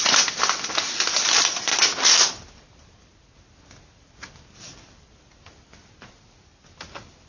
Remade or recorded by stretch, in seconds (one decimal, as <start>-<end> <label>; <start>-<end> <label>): 0.0-1.7 remade; 1.7-6.1 recorded; 6.1-7.3 remade